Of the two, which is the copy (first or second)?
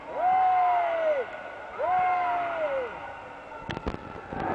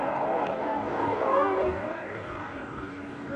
second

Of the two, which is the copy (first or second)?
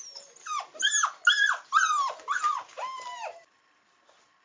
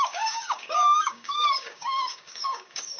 second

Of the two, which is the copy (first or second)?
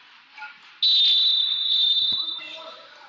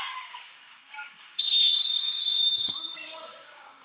second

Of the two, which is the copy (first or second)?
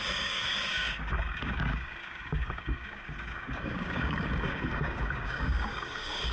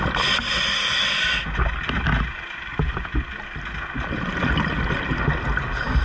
first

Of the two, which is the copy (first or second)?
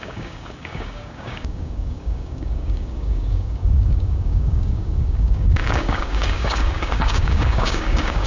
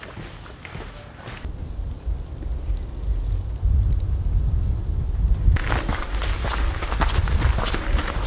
first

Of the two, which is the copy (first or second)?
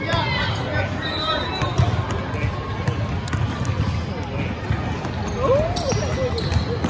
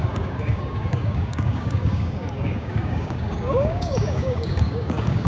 second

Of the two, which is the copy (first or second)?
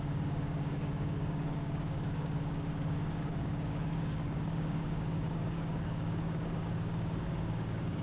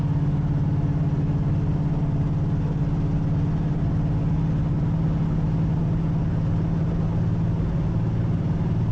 first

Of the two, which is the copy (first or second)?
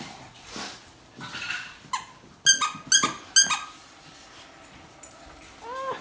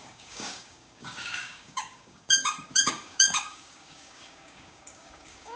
second